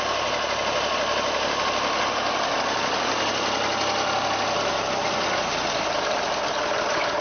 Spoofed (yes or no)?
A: no